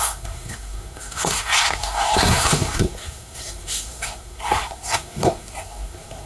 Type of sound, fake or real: fake